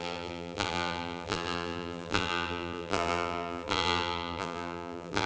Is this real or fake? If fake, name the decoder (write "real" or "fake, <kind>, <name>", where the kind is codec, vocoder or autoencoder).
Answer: fake, vocoder, BigVGAN v2